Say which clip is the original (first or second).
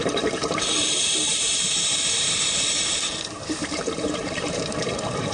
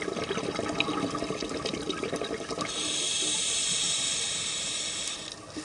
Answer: second